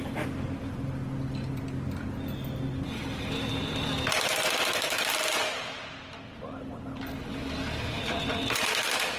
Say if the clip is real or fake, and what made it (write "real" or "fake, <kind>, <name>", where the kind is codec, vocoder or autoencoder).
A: real